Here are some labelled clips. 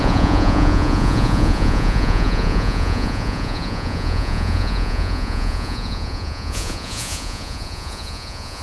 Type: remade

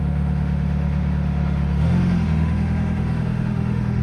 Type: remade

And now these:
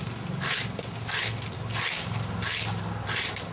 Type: recorded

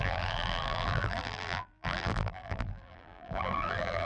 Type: remade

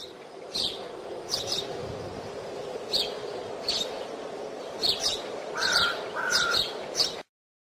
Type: remade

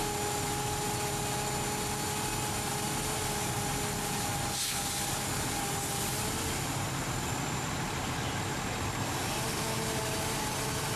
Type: recorded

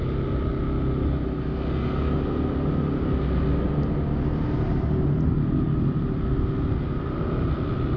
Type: recorded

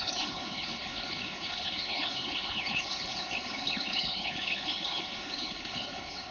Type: remade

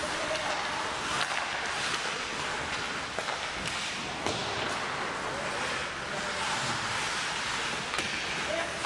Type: recorded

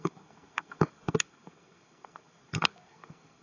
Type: remade